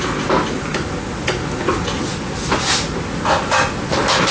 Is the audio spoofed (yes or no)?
no